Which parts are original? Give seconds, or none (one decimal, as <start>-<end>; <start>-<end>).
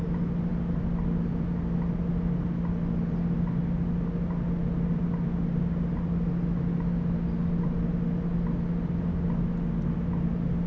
0.0-10.7